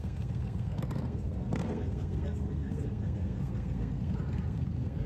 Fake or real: fake